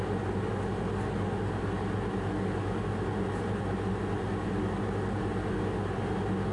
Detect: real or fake real